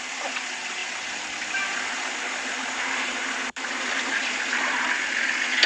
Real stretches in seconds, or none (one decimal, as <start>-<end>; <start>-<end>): 0.0-5.7